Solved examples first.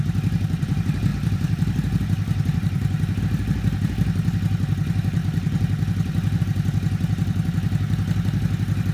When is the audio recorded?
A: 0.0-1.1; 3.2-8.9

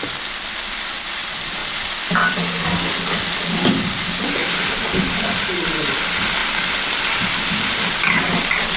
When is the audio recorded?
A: 0.0-8.8

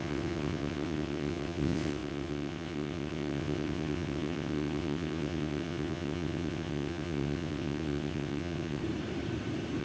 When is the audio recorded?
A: 8.8-9.8

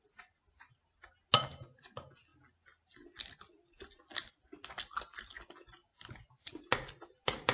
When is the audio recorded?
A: 0.0-5.9; 6.5-7.5

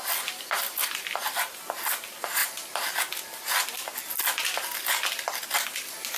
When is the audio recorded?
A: 0.0-6.2

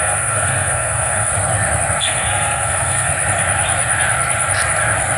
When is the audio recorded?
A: 1.3-2.0; 3.1-5.2

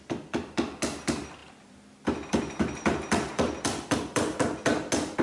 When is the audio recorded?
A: 0.0-1.4; 4.4-5.2